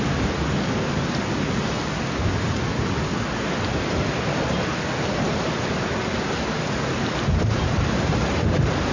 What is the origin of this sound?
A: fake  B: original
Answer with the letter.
B